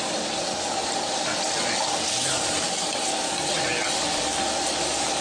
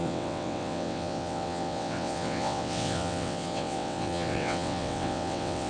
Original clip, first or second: first